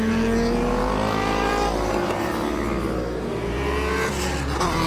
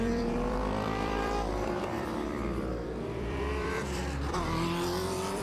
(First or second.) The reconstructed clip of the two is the second